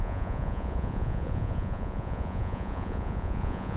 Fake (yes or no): yes